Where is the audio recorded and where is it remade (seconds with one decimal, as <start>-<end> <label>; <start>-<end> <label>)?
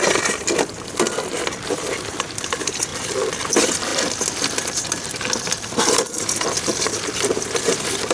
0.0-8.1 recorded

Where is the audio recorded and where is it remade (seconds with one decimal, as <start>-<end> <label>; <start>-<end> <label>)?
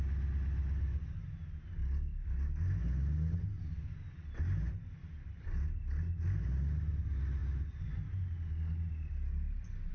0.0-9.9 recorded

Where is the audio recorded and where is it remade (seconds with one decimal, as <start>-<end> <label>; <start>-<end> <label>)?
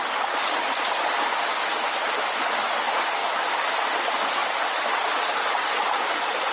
0.0-6.5 recorded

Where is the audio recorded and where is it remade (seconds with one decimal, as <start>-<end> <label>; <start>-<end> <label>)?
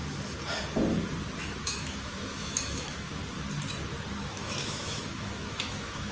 0.0-1.4 recorded; 1.4-3.2 remade; 3.2-4.2 recorded; 4.2-6.1 remade